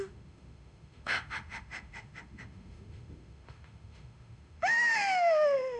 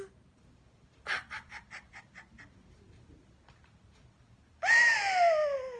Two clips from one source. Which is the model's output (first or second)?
first